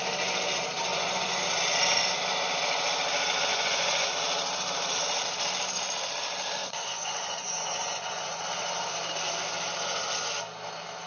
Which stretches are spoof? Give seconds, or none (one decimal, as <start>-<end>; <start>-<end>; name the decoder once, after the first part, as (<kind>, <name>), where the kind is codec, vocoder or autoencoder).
0.9-1.4 (vocoder, Vocos); 3.5-4.1; 6.6-8.4